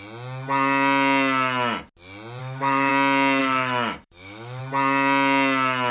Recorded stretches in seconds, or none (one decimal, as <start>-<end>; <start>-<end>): 0.0-2.4; 2.9-3.4; 4.6-5.9